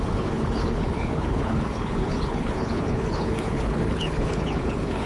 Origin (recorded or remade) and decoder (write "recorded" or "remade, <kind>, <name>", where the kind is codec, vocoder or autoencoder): remade, codec, HILCodec